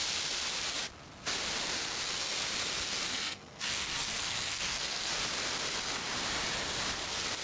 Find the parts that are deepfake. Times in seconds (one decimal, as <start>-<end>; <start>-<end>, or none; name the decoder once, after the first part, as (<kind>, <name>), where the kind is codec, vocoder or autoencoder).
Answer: 3.1-5.1 (codec, SNAC)